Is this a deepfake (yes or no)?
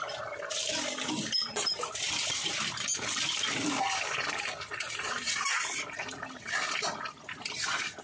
yes